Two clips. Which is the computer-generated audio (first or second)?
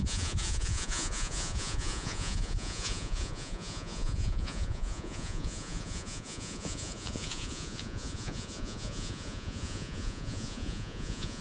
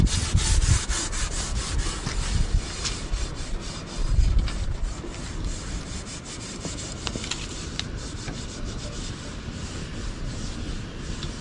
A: first